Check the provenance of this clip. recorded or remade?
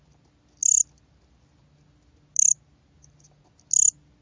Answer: recorded